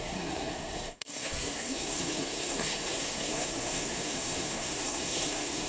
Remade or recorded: remade